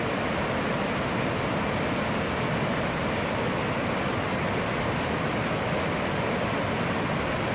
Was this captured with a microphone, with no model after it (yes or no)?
yes